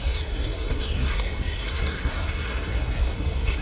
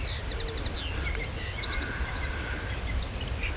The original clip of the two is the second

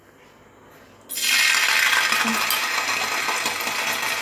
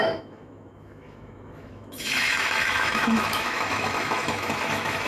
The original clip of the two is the first